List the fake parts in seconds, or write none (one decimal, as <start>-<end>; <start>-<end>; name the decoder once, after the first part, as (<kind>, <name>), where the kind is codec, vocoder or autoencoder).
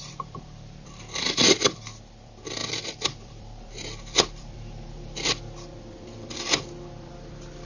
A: 0.0-7.7 (vocoder, BigVGAN v2)